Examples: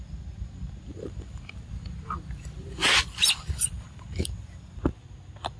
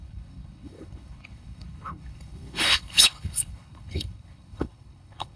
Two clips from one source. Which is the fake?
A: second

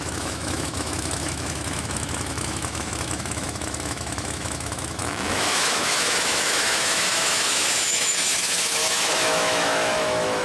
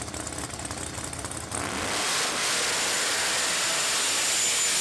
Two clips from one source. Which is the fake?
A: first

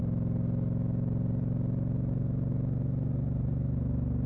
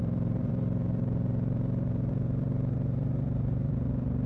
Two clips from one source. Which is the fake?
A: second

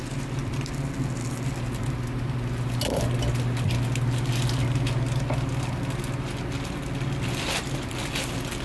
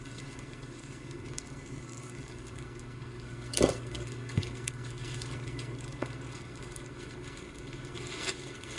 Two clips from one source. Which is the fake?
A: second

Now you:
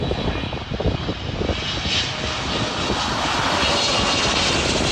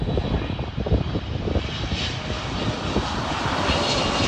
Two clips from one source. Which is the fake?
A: second